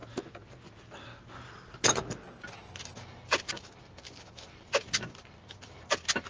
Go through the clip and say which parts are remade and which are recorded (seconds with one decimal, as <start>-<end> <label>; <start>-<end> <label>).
0.0-6.3 recorded